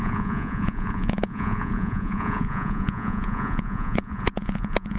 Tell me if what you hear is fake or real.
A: fake